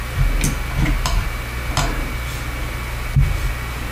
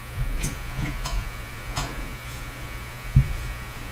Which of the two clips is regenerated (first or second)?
second